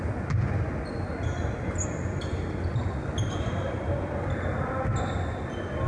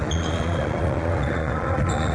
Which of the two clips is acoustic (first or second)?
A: first